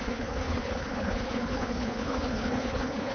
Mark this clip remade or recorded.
remade